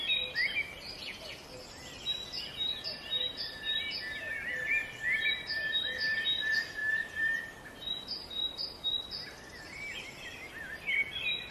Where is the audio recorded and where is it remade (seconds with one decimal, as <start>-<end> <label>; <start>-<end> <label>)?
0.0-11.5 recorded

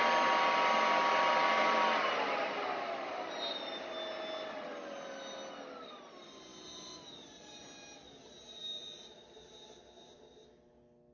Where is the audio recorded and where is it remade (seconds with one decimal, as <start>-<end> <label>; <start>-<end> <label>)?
0.0-11.1 recorded

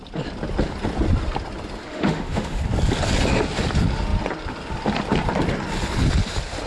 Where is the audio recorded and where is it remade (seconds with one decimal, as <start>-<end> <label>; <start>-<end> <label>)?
0.0-1.9 recorded; 1.9-2.6 remade; 2.6-6.7 recorded